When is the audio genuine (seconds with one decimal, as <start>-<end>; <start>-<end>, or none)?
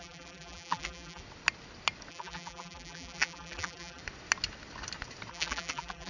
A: 1.2-2.1; 4.0-5.3